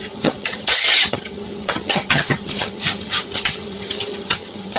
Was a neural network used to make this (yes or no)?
yes